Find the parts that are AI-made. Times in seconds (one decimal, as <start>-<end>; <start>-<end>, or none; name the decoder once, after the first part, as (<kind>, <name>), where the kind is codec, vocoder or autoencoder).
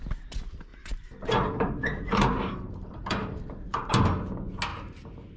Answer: 0.7-3.9 (vocoder, BigVGAN v2); 4.7-5.4